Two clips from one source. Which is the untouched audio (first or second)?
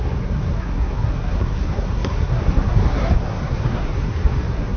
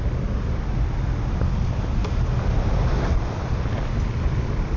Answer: second